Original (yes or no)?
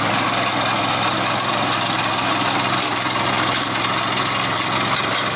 yes